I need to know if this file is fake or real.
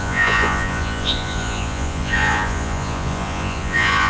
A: fake